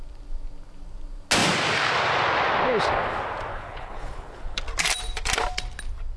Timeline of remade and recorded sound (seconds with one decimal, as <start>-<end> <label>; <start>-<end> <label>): 0.0-3.5 recorded; 3.5-4.6 remade; 4.6-6.2 recorded